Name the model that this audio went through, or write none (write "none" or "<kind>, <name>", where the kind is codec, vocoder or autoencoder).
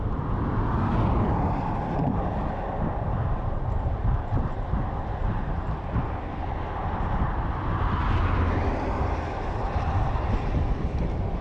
none